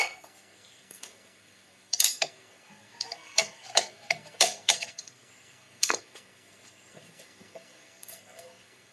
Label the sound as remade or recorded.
remade